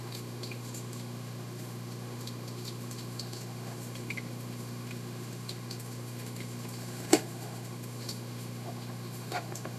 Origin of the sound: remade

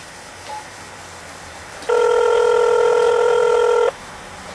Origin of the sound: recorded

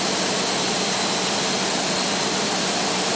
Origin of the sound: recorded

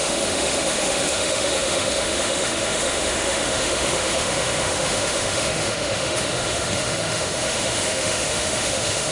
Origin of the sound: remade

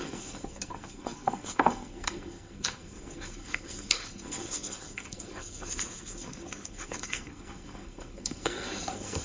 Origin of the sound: remade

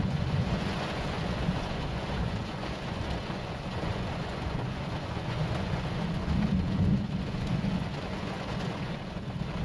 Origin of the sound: remade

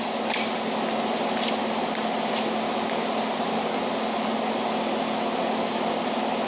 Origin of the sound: recorded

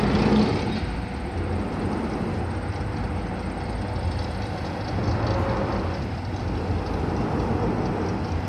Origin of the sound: recorded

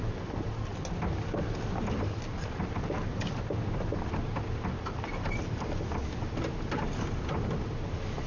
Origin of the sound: recorded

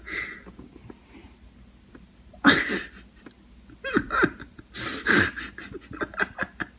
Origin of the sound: recorded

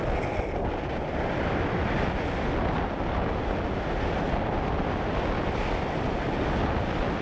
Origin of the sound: recorded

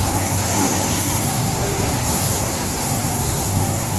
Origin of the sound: remade